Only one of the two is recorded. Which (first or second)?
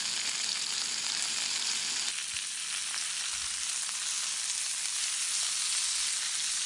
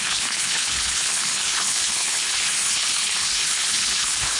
first